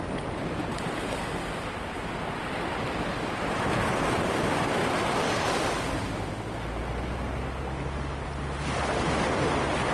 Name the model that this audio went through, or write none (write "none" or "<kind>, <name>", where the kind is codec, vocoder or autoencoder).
none